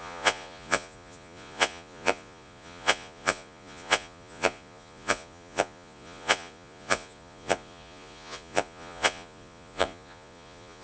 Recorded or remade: remade